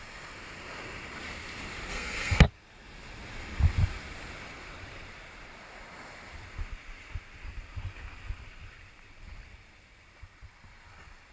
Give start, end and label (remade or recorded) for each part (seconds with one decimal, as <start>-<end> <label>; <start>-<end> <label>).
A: 0.0-1.9 recorded; 1.9-2.4 remade; 2.4-11.3 recorded

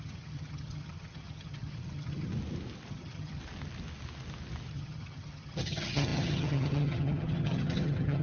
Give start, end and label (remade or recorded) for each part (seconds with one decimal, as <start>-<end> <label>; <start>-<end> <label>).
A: 0.0-2.3 remade; 2.3-2.9 recorded; 2.9-3.4 remade; 3.4-4.7 recorded; 4.7-8.2 remade

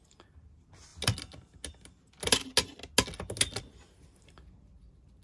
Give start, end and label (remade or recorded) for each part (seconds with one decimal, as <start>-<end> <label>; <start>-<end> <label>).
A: 0.0-5.2 recorded

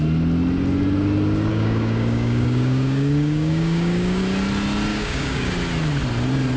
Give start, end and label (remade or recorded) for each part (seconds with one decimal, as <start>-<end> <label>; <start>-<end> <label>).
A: 0.0-1.5 recorded; 1.5-4.2 remade; 4.2-4.9 recorded; 4.9-5.5 remade; 5.5-6.6 recorded

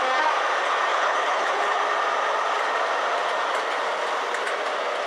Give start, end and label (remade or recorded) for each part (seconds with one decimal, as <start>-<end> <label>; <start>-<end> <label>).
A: 0.0-0.9 recorded; 0.9-1.8 remade; 1.8-5.1 recorded

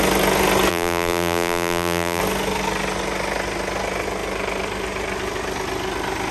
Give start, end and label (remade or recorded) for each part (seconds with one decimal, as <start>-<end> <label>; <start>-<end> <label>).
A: 0.0-0.7 recorded; 0.7-2.2 remade; 2.2-6.3 recorded

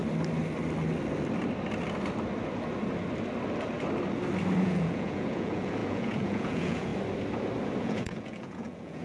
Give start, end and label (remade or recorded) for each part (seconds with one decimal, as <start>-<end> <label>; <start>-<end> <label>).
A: 0.0-4.6 recorded; 4.6-6.9 remade; 6.9-7.8 recorded; 7.8-9.0 remade